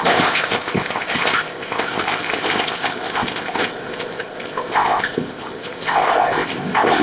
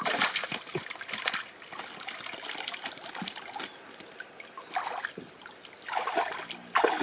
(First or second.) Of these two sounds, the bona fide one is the second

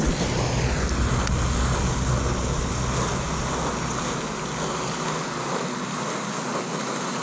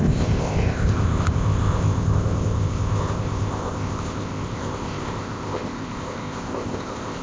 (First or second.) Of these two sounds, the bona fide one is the first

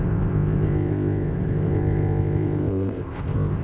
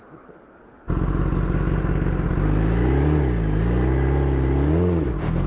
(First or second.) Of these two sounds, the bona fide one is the second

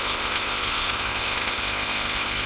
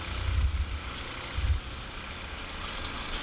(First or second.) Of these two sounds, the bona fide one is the second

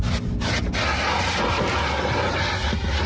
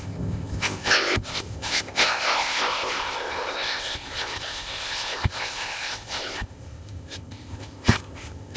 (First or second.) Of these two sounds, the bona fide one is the first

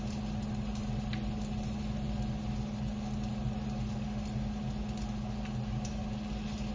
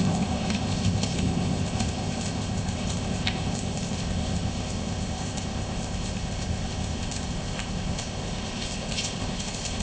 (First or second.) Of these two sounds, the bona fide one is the first